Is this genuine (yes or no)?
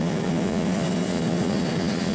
no